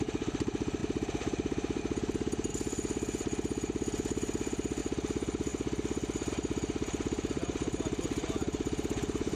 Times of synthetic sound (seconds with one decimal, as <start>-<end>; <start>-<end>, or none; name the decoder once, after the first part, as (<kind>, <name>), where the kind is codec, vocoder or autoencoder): 0.0-2.5 (vocoder, BigVGAN v2); 4.8-5.5; 6.3-9.4